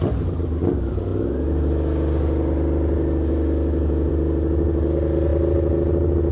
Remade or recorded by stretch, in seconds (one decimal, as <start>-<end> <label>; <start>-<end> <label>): 0.0-6.3 recorded